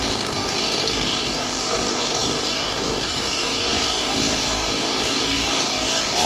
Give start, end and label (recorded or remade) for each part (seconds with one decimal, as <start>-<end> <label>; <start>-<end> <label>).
0.0-6.3 remade